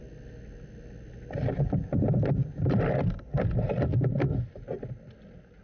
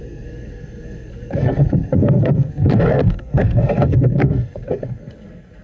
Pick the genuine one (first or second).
first